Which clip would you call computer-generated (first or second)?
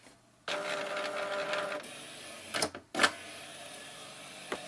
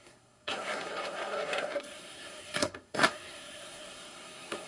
second